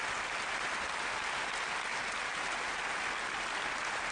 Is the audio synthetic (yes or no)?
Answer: no